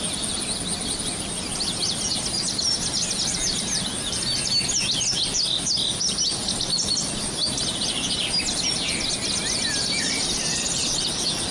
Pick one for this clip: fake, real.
real